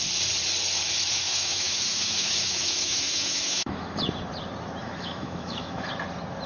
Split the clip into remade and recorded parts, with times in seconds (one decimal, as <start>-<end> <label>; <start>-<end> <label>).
0.0-1.1 recorded; 1.1-4.0 remade; 4.0-4.8 recorded; 4.8-5.9 remade; 5.9-6.5 recorded